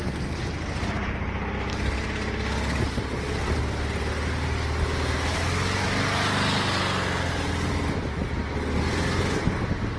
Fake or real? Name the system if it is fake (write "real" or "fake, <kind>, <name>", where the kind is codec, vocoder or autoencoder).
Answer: real